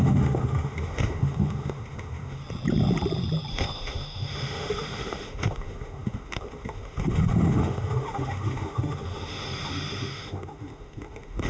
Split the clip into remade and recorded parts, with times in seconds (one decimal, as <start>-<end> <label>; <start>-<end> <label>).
0.0-2.4 remade; 2.4-3.5 recorded; 3.5-11.5 remade